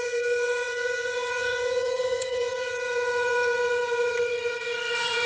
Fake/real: fake